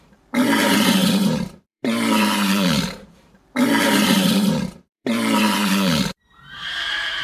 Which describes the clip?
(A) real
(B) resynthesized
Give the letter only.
B